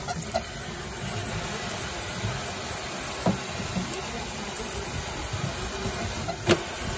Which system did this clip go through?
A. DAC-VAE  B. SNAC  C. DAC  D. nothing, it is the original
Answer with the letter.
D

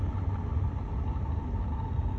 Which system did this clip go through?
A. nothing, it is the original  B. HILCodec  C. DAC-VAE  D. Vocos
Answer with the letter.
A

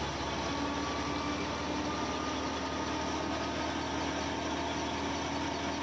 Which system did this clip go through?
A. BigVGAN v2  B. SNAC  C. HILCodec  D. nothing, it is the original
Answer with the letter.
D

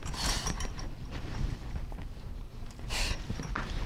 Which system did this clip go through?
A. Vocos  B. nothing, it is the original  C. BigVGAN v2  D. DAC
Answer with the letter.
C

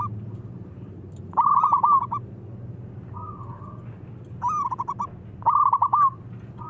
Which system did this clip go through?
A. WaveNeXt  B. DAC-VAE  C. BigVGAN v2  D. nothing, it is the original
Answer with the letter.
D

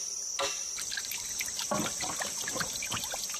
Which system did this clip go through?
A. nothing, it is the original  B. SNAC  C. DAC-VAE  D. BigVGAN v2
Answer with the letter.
A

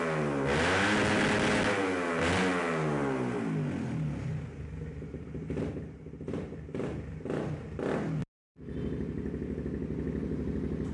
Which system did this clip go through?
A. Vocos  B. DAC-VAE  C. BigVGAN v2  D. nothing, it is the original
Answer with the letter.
D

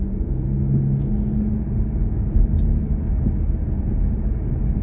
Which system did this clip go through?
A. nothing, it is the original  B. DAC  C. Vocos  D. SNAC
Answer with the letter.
A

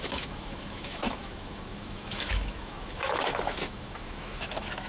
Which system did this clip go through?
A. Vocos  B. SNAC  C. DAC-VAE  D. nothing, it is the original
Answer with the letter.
C